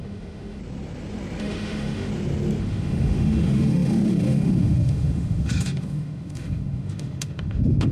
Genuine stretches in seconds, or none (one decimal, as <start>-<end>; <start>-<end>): 0.6-1.4; 2.1-2.6